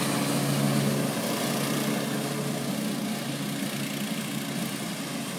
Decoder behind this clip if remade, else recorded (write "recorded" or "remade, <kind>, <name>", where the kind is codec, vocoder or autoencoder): recorded